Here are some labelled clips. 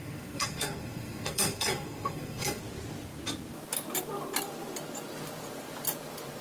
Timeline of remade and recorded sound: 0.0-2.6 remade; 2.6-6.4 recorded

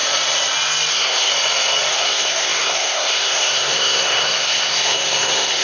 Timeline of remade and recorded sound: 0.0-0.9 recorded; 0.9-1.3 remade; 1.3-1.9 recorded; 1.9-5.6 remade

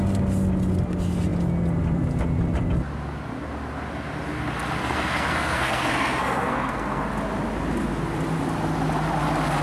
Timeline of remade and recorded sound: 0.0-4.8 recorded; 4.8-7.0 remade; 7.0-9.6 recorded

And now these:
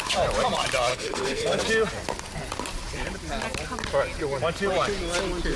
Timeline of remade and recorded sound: 0.0-0.9 recorded; 0.9-1.6 remade; 1.6-5.6 recorded

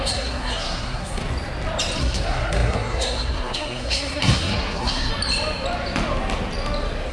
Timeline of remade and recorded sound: 0.0-1.2 remade; 1.2-2.0 recorded; 2.0-5.1 remade; 5.1-7.1 recorded

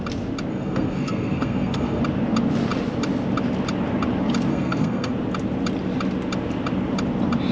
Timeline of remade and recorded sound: 0.0-0.5 recorded; 0.5-2.0 remade; 2.0-4.5 recorded; 4.5-5.1 remade; 5.1-7.5 recorded

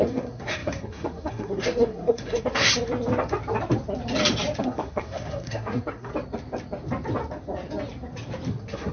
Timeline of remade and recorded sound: 0.0-2.7 remade; 2.7-4.6 recorded; 4.6-6.1 remade; 6.1-8.5 recorded; 8.5-8.9 remade